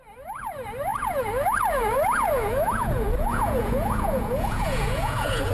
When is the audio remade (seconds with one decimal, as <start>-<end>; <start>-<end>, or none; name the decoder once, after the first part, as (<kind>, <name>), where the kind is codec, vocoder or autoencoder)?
0.0-5.5 (vocoder, Vocos)